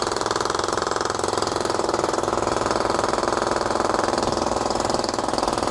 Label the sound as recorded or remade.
remade